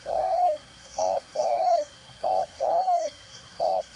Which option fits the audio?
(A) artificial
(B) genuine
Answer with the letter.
A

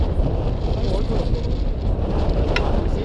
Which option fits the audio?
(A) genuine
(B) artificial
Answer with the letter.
A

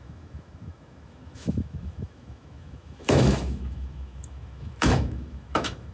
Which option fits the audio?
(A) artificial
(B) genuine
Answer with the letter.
A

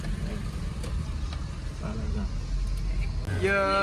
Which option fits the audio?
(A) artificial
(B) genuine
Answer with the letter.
B